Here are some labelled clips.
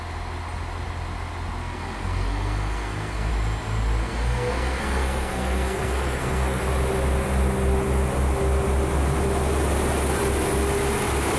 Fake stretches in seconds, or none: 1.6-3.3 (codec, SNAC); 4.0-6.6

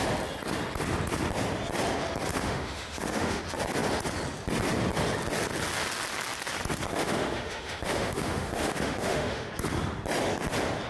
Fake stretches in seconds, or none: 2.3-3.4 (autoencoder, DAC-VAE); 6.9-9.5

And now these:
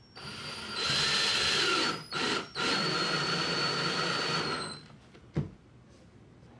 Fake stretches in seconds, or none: 2.0-4.7 (vocoder, BigVGAN v2)

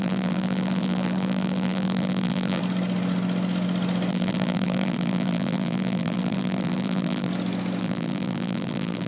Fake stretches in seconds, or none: 0.0-2.6 (vocoder, BigVGAN v2); 4.1-7.3; 7.8-9.1

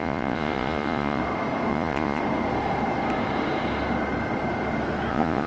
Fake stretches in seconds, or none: 0.0-1.2 (vocoder, Vocos); 1.7-2.2; 5.1-5.5